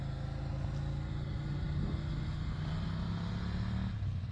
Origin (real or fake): real